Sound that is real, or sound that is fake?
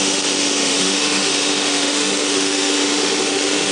fake